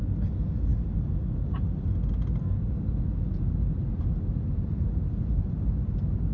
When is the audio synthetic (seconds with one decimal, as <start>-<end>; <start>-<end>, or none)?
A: none